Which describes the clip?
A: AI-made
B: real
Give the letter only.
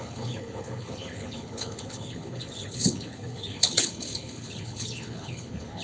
A